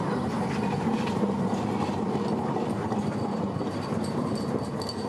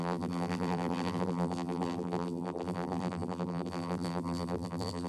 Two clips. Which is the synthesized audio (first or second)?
second